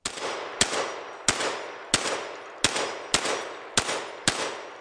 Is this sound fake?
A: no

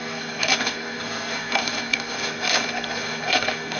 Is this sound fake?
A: yes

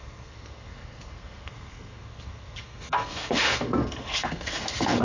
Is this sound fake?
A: yes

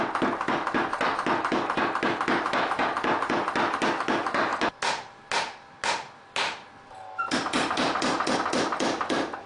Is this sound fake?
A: no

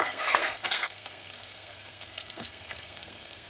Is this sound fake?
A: yes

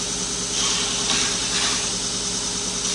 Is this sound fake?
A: no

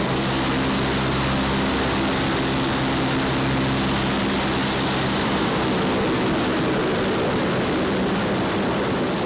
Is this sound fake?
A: no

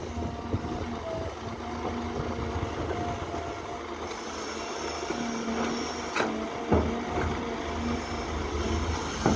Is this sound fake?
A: no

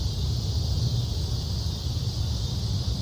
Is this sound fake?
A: no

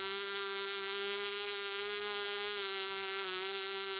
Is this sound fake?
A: yes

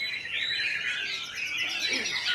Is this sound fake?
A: no